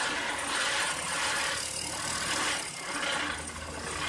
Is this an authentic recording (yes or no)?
yes